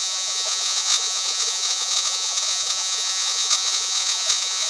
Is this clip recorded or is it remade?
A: remade